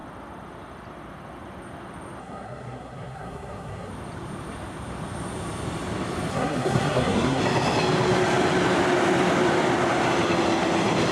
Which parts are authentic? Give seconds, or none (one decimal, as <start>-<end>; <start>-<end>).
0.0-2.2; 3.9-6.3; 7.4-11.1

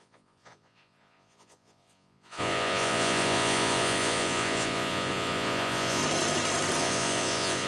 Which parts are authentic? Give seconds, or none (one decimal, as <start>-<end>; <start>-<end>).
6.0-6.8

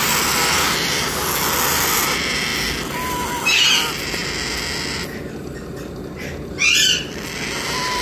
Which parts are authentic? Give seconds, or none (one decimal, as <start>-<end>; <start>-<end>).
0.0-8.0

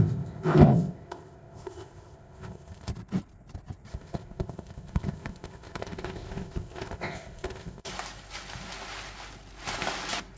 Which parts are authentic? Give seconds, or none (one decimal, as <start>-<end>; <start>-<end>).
2.9-3.9; 7.9-10.4